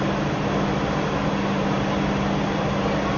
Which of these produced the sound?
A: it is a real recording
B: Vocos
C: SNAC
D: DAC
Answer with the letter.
A